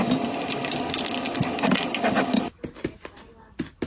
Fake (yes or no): no